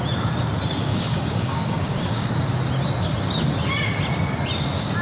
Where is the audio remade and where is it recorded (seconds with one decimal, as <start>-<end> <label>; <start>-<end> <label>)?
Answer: 0.0-0.9 recorded; 0.9-2.3 remade; 2.3-5.0 recorded